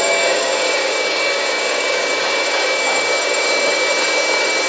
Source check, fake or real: fake